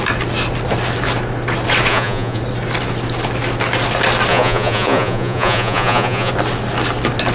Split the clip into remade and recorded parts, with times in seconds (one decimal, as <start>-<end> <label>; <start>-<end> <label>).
0.0-1.9 recorded; 1.9-2.4 remade; 2.4-4.3 recorded; 4.3-6.3 remade; 6.3-7.3 recorded